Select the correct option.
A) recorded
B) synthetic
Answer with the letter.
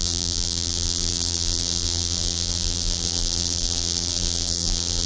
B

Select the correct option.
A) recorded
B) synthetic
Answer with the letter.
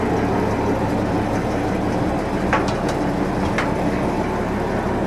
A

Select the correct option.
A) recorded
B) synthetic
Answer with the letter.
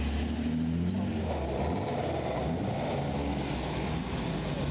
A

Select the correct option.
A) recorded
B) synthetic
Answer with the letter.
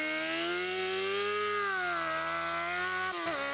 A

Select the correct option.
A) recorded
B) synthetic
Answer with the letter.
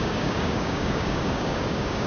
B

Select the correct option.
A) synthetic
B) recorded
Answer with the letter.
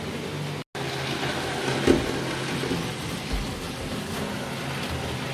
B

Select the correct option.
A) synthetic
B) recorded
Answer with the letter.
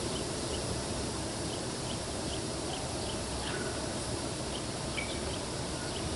A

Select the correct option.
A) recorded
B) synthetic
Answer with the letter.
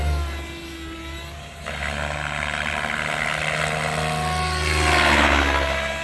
A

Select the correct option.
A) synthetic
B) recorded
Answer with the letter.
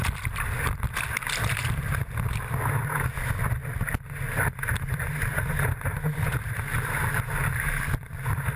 B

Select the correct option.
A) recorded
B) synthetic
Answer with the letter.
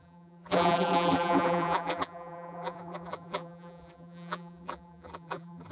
B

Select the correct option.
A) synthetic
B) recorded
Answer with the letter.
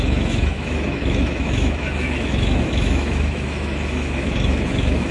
A